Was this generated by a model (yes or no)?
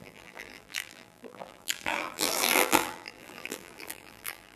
yes